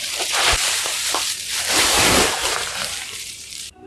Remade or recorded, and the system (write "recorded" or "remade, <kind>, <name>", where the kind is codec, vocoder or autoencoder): remade, vocoder, BigVGAN v2